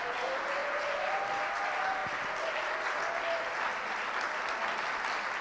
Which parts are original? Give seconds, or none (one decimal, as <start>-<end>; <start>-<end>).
0.0-0.6; 1.2-5.4